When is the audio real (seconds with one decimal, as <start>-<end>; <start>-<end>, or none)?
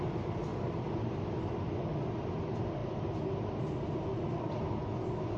0.0-5.4